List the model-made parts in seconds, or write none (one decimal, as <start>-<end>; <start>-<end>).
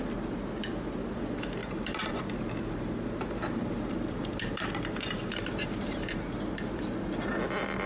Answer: 1.6-6.3